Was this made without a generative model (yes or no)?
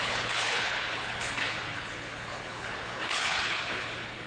no